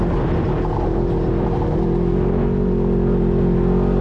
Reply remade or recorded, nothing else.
recorded